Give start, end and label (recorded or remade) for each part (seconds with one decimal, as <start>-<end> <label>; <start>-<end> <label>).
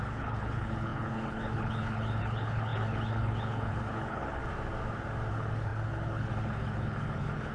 0.0-4.4 remade; 4.4-5.3 recorded; 5.3-7.5 remade